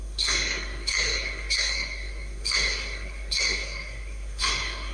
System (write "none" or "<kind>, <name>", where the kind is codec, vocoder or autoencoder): codec, SNAC